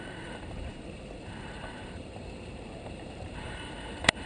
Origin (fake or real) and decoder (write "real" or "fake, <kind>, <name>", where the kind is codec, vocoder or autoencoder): fake, vocoder, BigVGAN v2